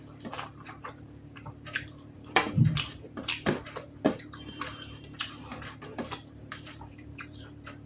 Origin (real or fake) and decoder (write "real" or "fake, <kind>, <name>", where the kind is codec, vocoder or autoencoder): fake, vocoder, BigVGAN v2